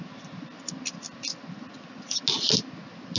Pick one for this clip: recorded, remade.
recorded